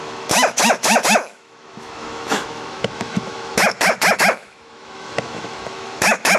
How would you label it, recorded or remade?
remade